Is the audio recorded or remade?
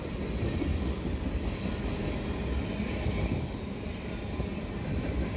recorded